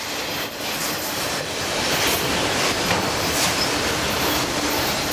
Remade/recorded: recorded